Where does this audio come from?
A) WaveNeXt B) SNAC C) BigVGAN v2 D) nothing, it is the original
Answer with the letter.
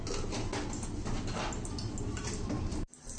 D